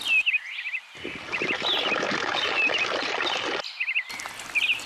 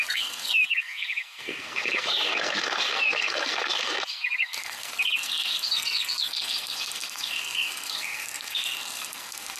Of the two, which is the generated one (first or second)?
second